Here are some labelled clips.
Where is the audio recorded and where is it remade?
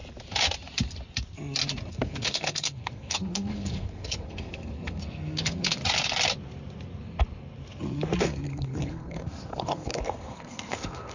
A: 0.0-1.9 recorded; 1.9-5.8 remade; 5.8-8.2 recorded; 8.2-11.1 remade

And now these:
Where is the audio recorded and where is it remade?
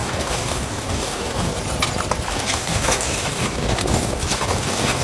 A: 0.0-1.5 remade; 1.5-2.3 recorded; 2.3-5.0 remade